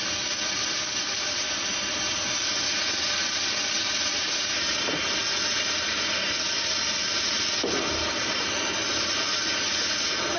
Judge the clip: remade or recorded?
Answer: recorded